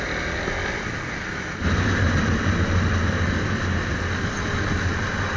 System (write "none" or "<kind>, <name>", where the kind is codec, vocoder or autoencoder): none